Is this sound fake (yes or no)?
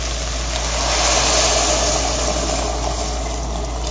no